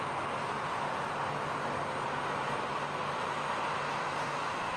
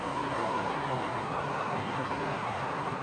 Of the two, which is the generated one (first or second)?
second